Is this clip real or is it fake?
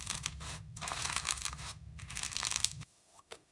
fake